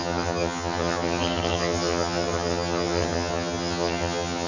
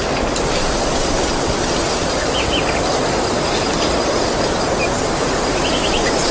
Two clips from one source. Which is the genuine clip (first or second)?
second